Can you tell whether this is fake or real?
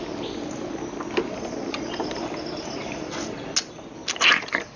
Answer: real